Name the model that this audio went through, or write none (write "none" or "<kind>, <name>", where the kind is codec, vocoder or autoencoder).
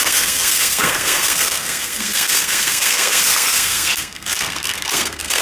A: codec, SNAC